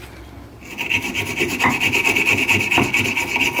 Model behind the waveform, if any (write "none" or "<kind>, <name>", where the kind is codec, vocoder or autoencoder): none